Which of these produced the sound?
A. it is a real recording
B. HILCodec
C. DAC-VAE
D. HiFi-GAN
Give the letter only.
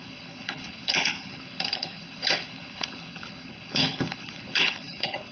B